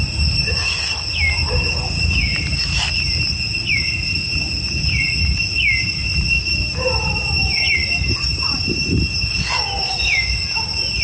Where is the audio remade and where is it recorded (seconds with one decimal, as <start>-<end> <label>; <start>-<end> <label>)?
0.0-11.0 recorded